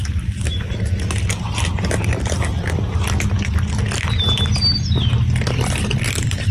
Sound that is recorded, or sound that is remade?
recorded